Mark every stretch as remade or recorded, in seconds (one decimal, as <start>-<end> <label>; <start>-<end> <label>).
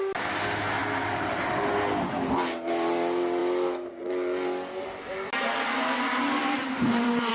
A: 0.0-6.4 recorded; 6.4-7.3 remade